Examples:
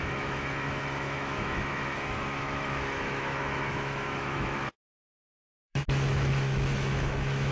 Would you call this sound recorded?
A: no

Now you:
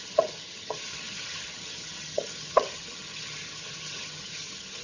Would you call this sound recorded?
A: no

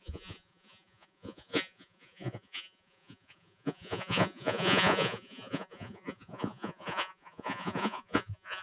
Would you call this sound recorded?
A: no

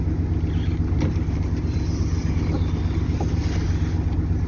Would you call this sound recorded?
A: yes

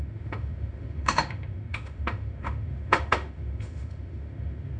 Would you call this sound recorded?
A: no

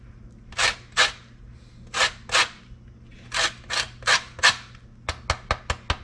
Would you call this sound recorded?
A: yes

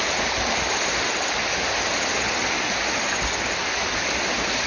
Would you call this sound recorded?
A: yes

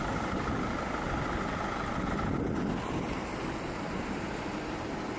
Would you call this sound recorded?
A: yes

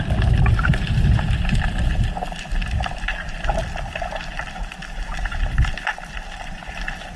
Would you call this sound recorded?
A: yes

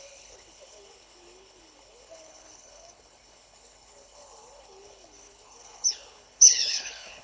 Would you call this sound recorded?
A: no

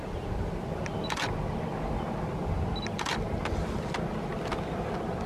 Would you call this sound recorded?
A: yes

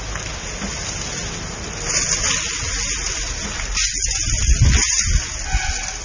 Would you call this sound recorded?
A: yes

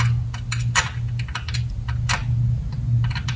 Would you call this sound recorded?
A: yes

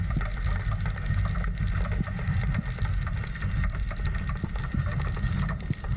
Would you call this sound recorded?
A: yes